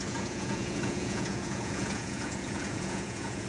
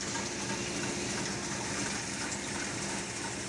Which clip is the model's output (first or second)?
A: first